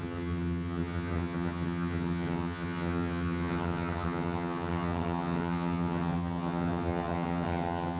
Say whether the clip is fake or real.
fake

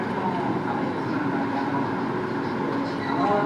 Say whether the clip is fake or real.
real